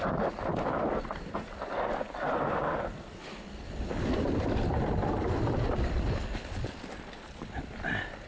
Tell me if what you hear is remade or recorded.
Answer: remade